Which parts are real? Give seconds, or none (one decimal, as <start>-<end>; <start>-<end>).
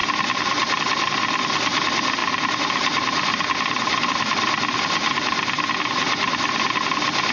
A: 0.0-7.3